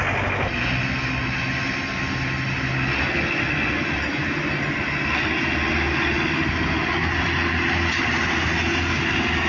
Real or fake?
real